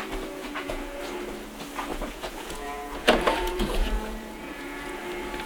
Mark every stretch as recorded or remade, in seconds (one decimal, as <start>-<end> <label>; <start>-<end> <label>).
0.0-0.4 recorded; 0.4-1.0 remade; 1.0-1.9 recorded; 1.9-5.0 remade; 5.0-5.5 recorded